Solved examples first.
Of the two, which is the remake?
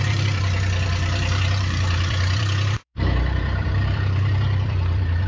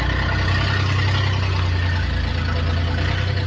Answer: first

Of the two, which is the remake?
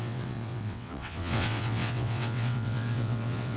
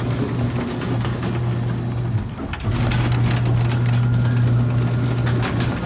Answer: first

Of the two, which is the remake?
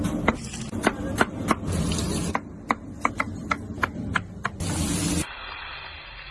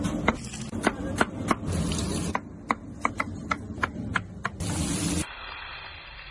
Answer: second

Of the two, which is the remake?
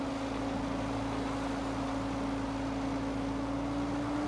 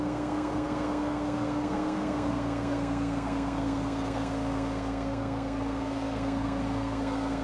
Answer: second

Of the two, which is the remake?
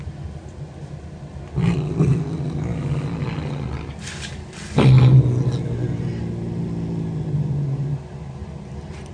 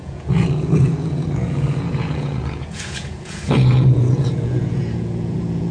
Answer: second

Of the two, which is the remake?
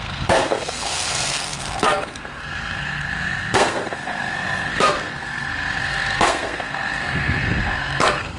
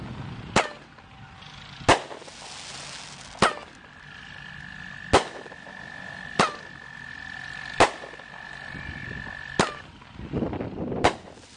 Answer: first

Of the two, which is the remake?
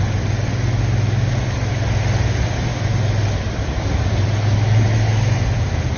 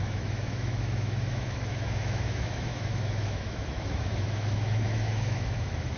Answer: second